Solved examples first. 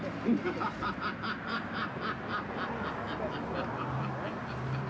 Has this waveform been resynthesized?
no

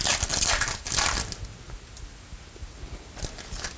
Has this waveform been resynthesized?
no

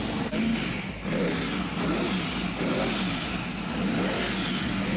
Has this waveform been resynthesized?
no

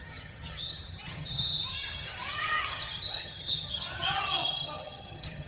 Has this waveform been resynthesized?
yes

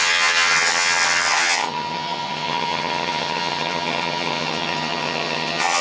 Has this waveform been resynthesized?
yes